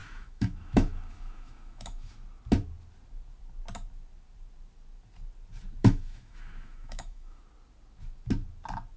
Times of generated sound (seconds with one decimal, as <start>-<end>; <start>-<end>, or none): 0.0-2.1; 5.8-7.4